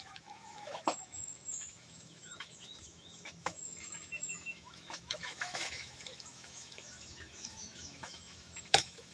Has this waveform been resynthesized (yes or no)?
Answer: yes